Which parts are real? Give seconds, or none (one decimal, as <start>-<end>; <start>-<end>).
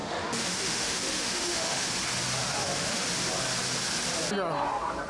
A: 1.9-2.4; 3.0-5.1